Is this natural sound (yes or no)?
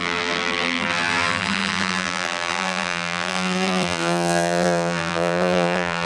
no